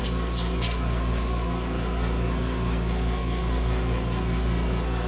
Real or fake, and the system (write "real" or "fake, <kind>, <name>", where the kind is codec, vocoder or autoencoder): fake, codec, SNAC